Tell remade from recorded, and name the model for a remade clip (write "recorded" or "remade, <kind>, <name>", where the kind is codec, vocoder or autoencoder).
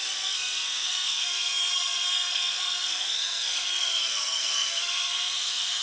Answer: remade, codec, SNAC